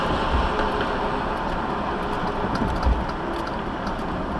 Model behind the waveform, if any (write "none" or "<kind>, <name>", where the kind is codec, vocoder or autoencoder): none